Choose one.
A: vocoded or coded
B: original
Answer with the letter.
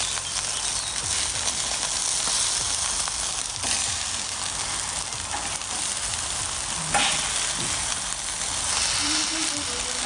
B